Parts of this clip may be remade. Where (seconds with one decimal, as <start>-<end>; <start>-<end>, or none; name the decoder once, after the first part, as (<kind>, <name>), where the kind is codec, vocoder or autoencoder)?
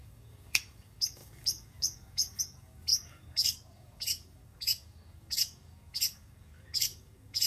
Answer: 0.0-7.5 (codec, DAC)